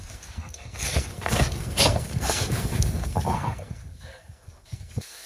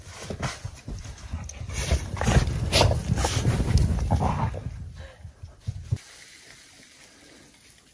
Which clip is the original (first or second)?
second